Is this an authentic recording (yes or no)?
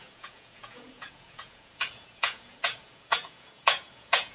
no